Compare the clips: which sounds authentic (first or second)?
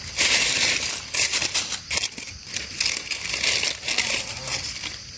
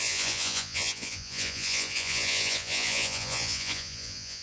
first